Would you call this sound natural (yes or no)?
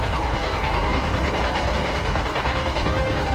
no